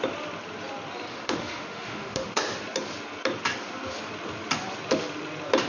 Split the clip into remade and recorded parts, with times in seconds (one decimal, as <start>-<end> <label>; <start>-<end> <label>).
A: 0.0-1.1 recorded; 1.1-2.3 remade; 2.3-5.7 recorded